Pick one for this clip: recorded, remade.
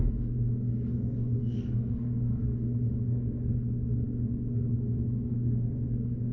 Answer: remade